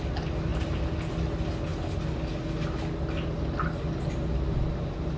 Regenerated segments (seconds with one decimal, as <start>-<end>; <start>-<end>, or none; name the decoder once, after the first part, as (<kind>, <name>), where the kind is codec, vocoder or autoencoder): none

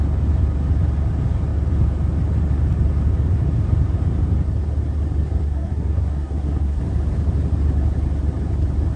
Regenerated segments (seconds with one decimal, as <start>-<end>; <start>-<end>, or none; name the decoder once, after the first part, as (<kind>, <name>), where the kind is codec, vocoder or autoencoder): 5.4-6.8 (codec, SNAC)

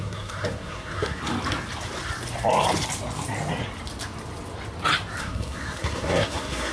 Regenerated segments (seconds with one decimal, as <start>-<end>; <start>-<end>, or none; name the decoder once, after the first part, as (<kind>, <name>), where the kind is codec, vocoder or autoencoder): 0.0-1.2 (codec, SNAC); 5.2-6.7

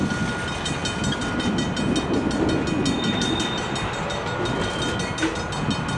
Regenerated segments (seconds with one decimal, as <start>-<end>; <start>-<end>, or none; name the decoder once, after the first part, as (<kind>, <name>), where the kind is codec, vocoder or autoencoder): none

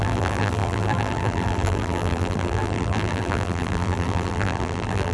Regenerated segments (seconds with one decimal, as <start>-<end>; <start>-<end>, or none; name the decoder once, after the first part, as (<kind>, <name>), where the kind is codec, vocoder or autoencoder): 0.0-5.1 (vocoder, BigVGAN v2)